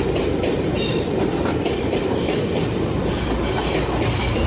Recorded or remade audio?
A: remade